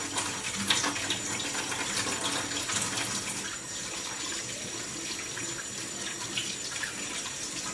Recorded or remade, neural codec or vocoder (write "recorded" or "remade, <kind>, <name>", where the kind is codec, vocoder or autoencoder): recorded